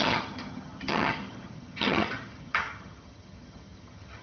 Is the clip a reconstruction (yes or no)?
yes